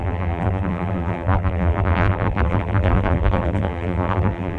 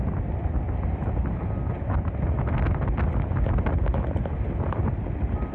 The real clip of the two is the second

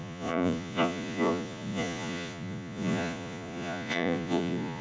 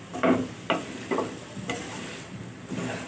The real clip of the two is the second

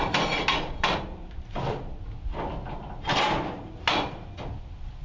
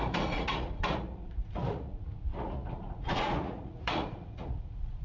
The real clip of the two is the first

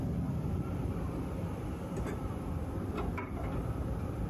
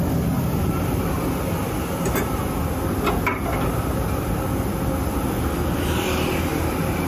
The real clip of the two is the second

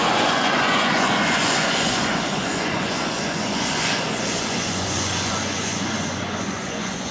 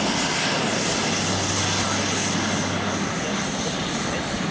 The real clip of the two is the second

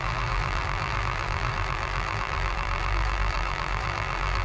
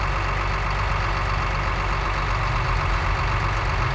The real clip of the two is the second